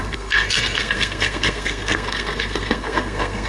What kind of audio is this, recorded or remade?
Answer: remade